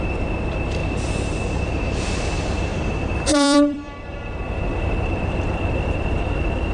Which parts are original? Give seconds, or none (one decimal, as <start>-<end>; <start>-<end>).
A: 0.0-2.7